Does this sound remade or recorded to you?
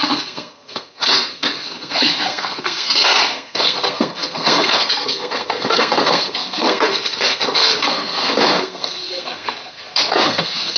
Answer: remade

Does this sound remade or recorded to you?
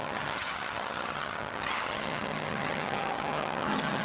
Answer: remade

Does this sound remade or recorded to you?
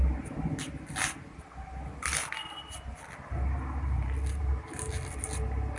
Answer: recorded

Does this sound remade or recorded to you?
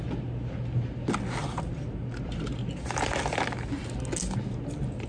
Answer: recorded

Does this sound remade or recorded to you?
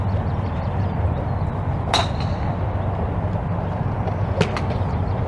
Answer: recorded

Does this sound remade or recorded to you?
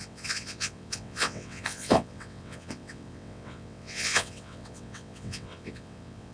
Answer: remade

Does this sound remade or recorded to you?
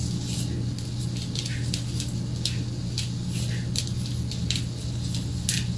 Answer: recorded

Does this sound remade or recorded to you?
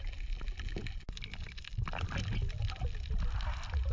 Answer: recorded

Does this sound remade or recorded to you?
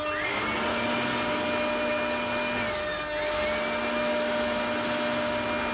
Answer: recorded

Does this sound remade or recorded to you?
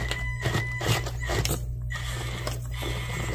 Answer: recorded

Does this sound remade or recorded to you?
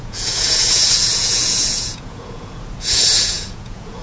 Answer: remade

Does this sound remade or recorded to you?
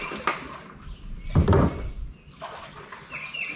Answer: recorded